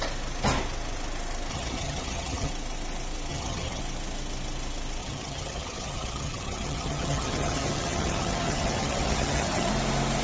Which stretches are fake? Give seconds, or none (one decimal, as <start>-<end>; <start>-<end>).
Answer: 1.5-2.5; 3.3-3.8; 5.0-9.7